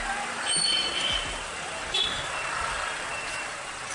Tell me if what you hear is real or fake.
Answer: real